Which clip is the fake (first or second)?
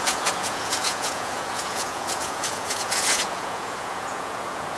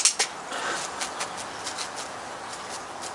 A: first